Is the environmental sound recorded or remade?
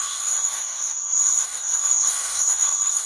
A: remade